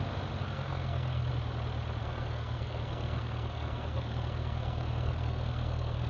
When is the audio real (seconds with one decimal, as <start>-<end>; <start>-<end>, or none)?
0.0-0.4; 1.3-2.0

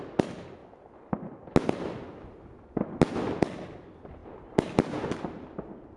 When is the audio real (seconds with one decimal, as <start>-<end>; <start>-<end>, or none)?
0.0-6.0

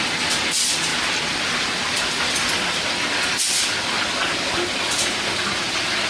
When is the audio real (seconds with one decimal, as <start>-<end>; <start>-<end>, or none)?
0.0-6.1

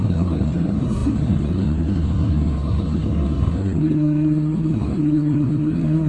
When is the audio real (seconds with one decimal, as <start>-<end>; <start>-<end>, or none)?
none